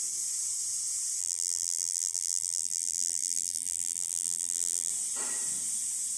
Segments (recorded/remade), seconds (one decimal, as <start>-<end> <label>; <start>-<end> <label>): 0.0-1.2 recorded; 1.2-4.9 remade; 4.9-6.2 recorded

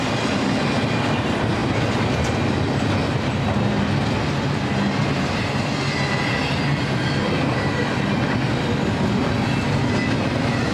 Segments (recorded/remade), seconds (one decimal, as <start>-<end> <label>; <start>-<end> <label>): 0.0-10.7 recorded

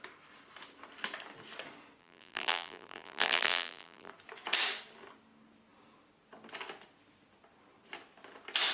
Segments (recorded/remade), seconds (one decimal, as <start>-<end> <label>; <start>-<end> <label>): 0.0-2.0 recorded; 2.0-4.1 remade; 4.1-8.7 recorded